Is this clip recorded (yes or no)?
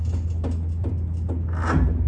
yes